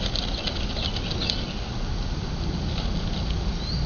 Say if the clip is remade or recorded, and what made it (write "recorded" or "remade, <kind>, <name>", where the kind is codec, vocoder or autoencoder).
recorded